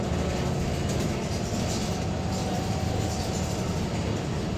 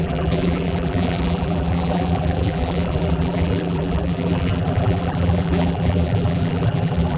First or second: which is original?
first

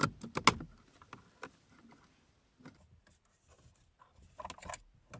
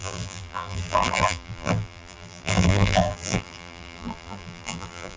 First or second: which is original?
first